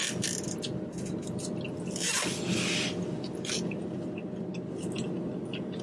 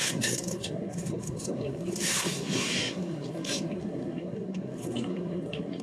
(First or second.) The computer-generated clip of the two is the second